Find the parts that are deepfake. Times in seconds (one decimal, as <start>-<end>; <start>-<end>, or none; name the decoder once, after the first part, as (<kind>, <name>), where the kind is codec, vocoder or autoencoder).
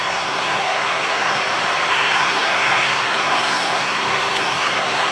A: 0.0-1.4 (codec, SNAC); 1.9-5.1